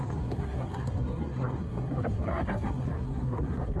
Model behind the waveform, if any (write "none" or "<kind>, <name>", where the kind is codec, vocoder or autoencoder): codec, SNAC